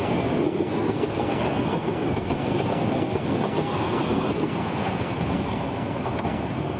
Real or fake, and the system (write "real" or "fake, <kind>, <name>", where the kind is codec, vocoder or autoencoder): fake, codec, SNAC